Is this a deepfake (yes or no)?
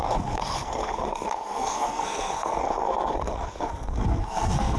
yes